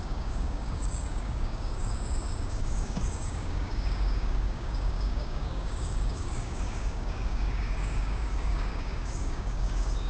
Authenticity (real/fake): fake